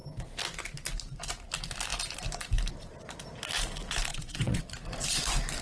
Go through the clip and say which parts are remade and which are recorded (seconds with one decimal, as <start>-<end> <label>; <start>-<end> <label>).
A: 0.0-4.1 recorded; 4.1-4.6 remade; 4.6-5.6 recorded